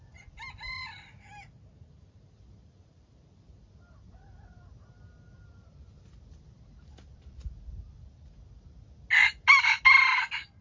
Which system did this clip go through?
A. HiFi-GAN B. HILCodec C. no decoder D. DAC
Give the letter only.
C